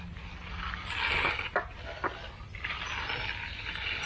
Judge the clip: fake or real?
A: real